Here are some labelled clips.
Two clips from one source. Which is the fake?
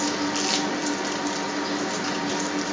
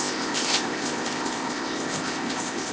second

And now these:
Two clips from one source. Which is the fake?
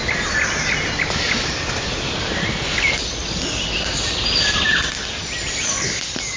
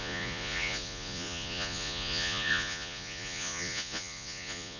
second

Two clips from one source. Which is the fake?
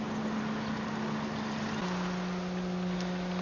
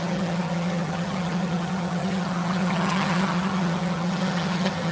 second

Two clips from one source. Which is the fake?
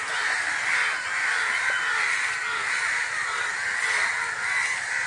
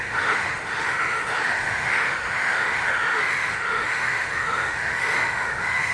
second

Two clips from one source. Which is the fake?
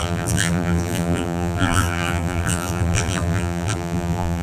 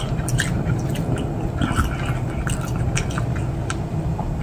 first